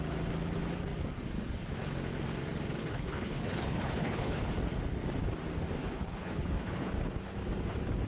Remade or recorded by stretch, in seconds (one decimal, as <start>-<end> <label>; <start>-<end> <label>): 0.0-2.8 recorded; 2.8-4.5 remade; 4.5-5.8 recorded; 5.8-6.9 remade; 6.9-8.1 recorded